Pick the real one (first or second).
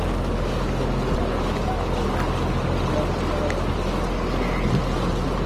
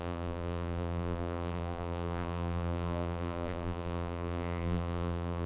first